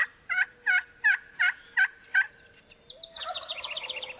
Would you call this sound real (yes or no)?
yes